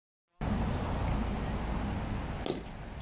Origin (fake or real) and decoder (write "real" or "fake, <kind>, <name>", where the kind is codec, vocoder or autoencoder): real